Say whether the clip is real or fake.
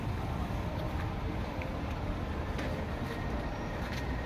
real